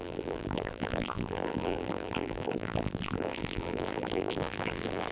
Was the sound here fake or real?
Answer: fake